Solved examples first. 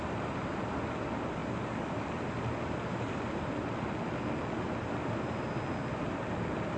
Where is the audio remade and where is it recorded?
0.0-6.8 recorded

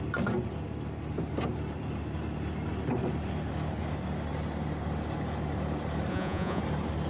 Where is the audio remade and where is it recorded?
0.0-6.1 recorded; 6.1-6.6 remade; 6.6-7.1 recorded